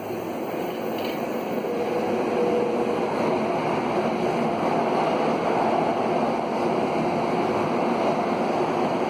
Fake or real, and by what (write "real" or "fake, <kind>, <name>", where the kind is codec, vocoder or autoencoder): real